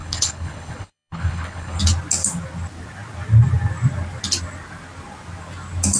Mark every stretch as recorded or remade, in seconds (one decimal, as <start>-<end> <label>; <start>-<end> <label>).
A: 0.0-1.8 remade; 1.8-6.0 recorded